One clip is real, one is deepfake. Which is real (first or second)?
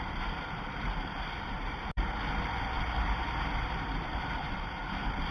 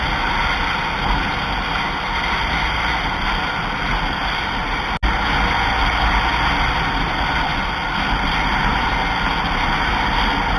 second